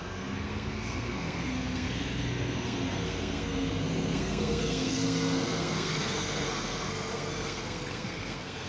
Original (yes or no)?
no